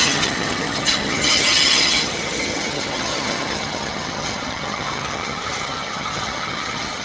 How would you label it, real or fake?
fake